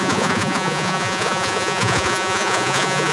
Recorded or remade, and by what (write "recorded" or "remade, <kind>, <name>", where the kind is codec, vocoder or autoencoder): remade, vocoder, Vocos